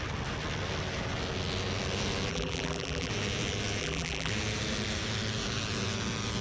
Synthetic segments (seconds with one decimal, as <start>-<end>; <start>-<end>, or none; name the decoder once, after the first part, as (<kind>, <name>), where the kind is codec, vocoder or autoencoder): 2.3-3.1 (vocoder, BigVGAN v2); 3.8-4.3